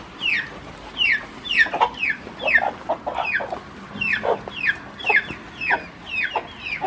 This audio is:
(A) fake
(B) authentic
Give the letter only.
B